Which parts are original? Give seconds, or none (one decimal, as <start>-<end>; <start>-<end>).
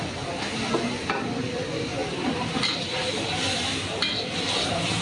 0.0-5.0